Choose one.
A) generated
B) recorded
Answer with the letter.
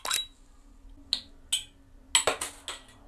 B